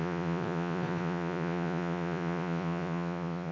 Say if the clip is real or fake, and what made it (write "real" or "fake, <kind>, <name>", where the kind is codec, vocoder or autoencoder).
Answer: fake, vocoder, Vocos